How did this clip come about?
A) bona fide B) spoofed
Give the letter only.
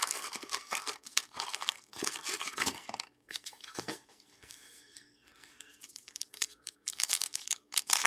B